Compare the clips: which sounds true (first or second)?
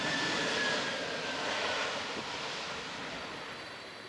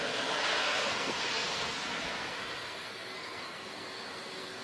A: first